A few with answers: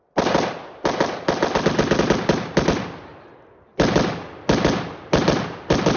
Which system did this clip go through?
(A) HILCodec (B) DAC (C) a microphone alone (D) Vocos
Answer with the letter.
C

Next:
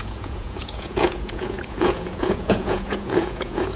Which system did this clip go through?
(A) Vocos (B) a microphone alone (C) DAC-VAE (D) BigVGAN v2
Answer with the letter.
A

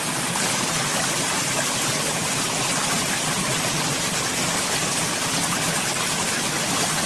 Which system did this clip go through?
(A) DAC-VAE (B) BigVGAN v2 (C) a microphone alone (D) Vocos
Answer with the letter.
C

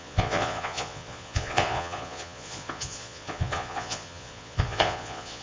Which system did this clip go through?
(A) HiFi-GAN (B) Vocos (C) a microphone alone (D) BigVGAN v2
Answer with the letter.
B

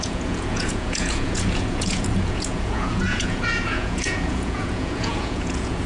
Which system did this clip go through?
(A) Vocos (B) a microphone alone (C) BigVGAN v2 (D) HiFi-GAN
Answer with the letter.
A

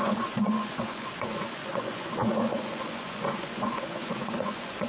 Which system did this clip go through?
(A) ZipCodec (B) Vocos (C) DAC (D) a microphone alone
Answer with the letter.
B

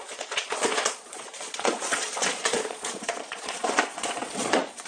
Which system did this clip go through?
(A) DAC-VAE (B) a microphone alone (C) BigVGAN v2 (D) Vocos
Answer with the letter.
D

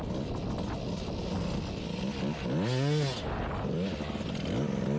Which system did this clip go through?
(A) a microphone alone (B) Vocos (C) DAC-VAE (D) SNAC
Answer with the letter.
A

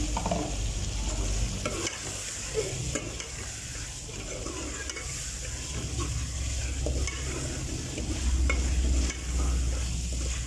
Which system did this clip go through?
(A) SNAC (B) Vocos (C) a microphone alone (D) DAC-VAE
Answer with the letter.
C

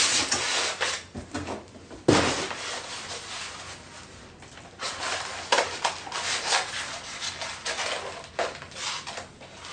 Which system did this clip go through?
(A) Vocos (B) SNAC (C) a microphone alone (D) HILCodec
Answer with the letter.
C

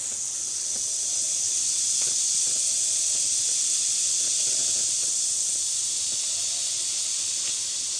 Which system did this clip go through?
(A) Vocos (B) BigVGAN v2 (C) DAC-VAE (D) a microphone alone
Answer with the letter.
D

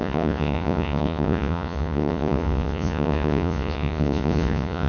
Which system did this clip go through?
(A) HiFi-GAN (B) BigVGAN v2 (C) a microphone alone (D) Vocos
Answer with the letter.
D